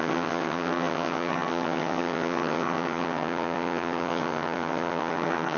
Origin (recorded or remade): remade